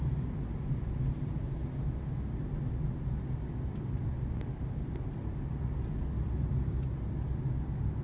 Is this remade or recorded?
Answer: recorded